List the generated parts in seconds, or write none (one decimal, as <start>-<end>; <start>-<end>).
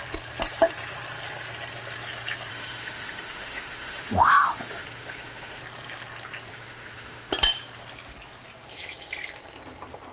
2.5-5.6; 6.5-7.3